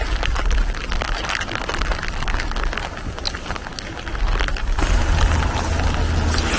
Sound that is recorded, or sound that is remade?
recorded